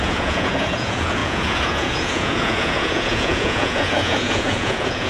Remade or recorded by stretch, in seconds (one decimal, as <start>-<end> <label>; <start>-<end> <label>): 0.0-5.1 remade